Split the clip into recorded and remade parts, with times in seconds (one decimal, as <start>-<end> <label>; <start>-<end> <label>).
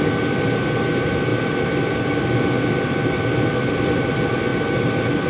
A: 0.0-5.3 recorded